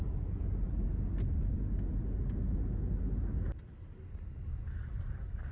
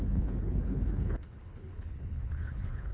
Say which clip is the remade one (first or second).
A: second